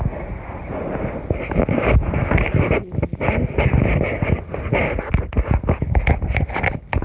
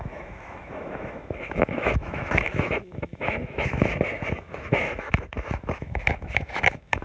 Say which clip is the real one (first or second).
first